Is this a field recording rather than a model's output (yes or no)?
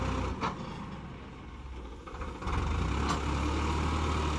yes